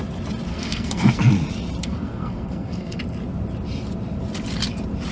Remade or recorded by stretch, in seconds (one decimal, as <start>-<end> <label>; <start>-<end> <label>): 0.0-0.5 recorded; 0.5-1.3 remade; 1.3-1.8 recorded; 1.8-3.0 remade; 3.0-5.1 recorded

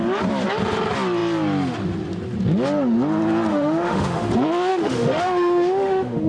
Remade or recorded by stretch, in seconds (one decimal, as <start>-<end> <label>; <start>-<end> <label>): 0.0-3.5 recorded; 3.5-4.3 remade; 4.3-4.7 recorded; 4.7-6.3 remade